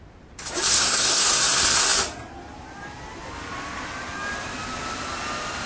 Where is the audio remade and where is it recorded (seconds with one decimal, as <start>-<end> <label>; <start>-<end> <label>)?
0.0-0.7 recorded; 0.7-1.3 remade; 1.3-5.7 recorded